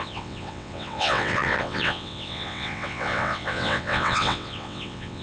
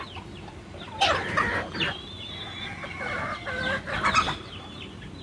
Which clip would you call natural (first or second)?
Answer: second